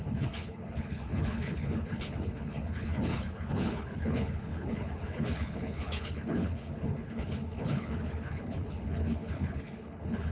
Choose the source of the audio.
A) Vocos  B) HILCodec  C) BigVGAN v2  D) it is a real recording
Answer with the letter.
B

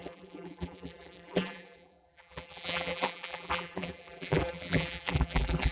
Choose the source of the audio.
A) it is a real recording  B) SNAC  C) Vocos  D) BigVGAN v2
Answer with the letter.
D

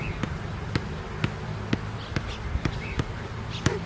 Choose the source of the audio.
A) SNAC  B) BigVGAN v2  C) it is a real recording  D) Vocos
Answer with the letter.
C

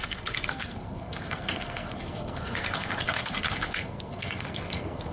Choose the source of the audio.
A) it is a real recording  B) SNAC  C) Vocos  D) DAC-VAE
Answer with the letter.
B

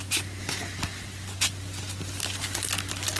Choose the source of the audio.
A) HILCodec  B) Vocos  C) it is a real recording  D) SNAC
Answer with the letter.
C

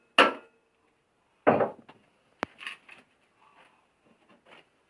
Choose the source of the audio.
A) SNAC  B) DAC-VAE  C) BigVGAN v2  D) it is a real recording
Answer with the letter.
D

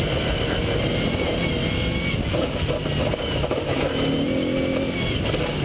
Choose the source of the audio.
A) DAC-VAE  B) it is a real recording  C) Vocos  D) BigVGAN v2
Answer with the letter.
B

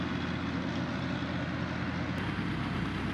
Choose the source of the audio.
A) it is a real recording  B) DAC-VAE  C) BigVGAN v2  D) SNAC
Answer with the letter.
A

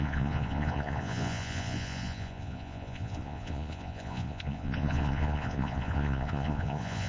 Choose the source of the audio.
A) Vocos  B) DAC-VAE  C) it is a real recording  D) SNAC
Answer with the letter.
A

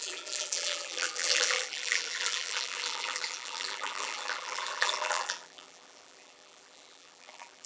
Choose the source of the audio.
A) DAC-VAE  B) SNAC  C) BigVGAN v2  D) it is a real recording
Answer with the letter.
C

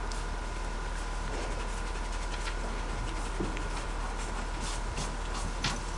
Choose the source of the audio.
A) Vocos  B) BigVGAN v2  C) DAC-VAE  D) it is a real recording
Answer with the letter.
D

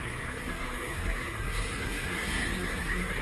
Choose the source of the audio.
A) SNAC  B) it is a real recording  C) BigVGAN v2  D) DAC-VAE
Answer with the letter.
A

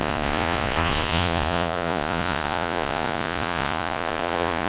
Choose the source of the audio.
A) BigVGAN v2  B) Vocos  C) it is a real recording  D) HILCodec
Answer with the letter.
B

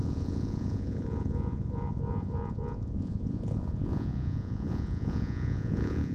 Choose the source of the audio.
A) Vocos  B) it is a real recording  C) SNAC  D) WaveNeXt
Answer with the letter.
A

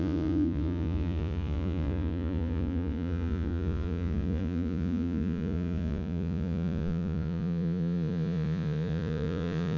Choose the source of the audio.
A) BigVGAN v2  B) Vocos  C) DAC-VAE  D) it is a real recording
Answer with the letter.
B